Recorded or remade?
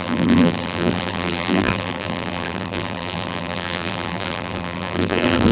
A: remade